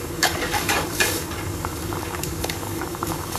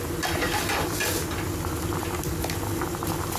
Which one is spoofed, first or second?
first